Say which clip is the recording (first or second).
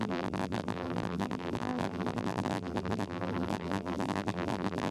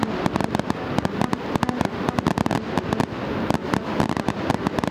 second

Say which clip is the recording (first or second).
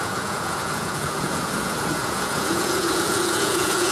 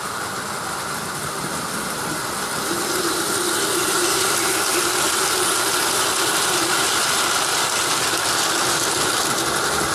second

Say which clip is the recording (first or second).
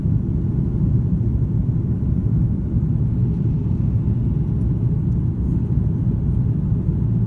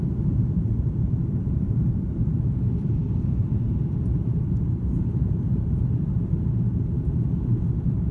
first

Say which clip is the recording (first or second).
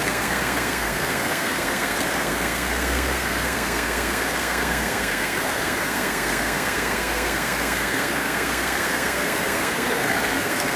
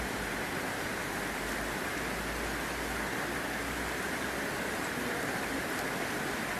second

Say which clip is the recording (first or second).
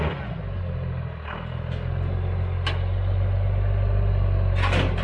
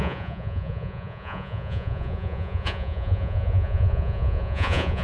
first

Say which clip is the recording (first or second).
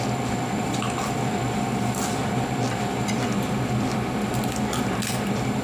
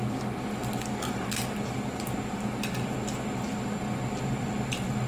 second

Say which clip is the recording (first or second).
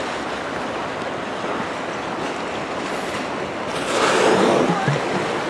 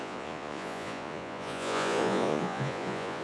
first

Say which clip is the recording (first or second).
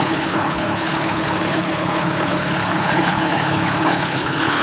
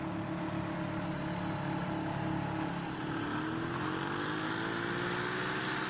second